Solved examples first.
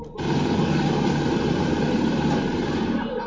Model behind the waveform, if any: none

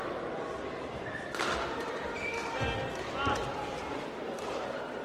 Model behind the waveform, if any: none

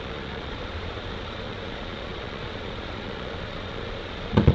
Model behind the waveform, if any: vocoder, Vocos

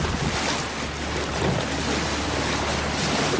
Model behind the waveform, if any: none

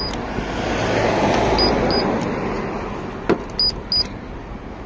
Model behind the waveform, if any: none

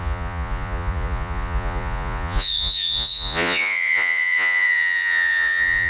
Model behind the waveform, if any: vocoder, Vocos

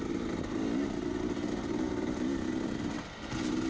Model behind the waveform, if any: none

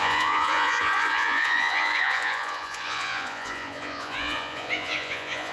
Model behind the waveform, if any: vocoder, Vocos